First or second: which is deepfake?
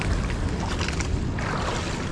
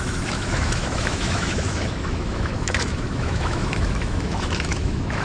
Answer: second